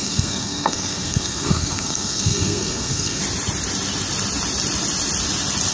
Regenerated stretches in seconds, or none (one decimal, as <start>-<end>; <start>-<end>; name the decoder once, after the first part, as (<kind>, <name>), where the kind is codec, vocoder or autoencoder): 0.0-3.2 (codec, SNAC)